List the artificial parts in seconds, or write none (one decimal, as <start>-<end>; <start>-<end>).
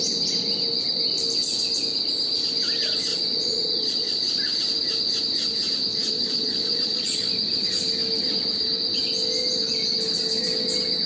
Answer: 3.1-4.2; 5.9-7.3